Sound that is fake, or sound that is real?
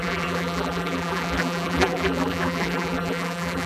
fake